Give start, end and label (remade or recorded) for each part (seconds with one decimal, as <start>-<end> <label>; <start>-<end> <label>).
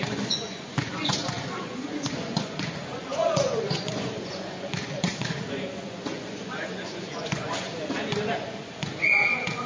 0.0-7.7 remade; 7.7-8.3 recorded; 8.3-9.7 remade